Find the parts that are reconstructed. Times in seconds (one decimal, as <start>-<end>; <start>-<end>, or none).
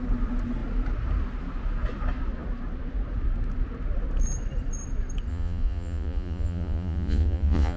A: 5.3-7.8